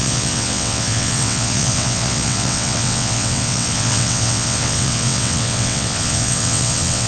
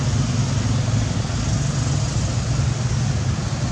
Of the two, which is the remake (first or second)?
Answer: first